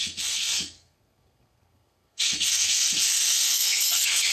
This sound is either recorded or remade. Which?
remade